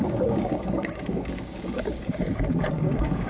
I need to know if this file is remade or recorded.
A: remade